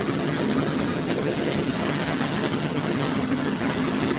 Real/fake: fake